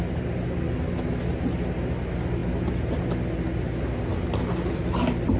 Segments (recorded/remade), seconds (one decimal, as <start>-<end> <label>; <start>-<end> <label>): 0.0-5.4 recorded